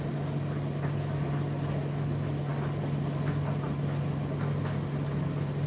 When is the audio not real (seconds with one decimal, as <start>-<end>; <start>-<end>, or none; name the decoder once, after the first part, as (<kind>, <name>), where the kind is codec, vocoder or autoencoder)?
none